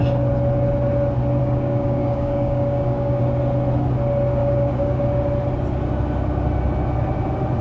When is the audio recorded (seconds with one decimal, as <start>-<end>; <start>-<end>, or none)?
0.0-1.4; 3.2-4.4; 5.0-7.6